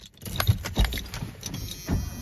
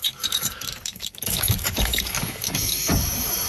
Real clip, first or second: first